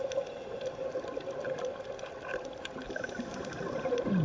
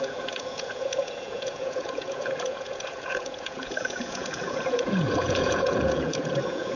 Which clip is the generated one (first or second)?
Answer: second